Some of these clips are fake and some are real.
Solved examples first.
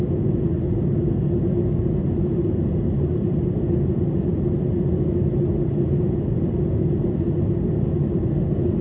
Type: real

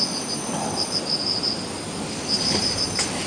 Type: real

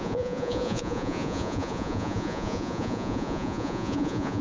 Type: fake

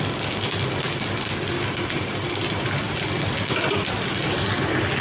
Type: real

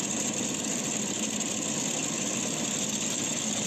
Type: real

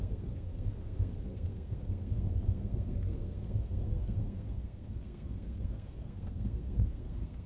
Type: fake